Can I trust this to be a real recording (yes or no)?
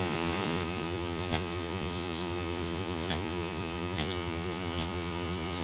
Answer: no